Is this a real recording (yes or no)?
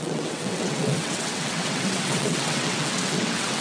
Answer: no